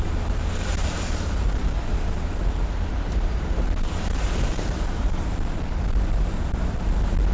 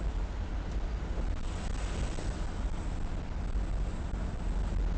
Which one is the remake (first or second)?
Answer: first